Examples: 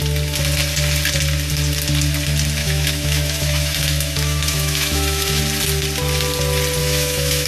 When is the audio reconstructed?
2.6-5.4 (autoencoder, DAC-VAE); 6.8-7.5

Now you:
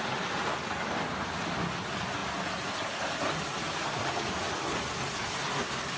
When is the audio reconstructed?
none